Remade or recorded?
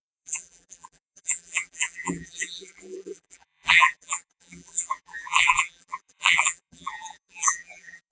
remade